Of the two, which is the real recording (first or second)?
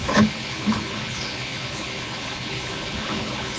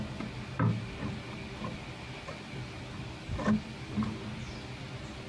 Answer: second